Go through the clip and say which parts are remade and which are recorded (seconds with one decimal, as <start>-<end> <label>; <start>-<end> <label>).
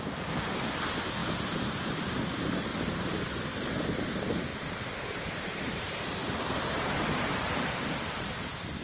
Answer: 0.0-1.2 recorded; 1.2-2.0 remade; 2.0-2.7 recorded; 2.7-3.6 remade; 3.6-4.5 recorded; 4.5-5.0 remade; 5.0-6.2 recorded; 6.2-8.8 remade